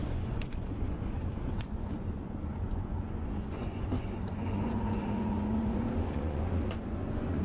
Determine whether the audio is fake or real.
fake